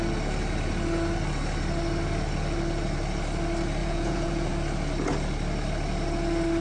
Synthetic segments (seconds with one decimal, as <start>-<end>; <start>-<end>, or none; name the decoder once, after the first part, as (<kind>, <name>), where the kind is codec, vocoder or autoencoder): 3.8-4.5 (vocoder, Vocos)